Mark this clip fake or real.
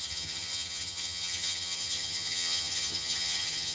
fake